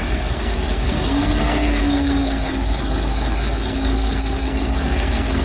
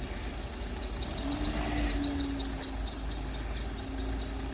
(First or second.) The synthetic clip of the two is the first